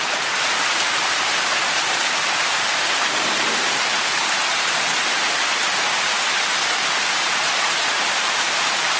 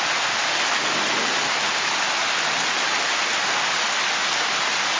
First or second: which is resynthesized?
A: first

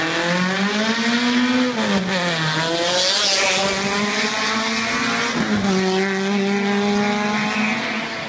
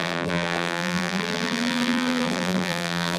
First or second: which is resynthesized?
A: second